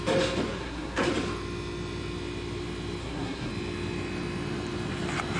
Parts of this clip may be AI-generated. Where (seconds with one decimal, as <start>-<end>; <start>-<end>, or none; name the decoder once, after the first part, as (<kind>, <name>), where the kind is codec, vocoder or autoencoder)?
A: 0.5-1.1 (codec, SNAC); 3.0-3.5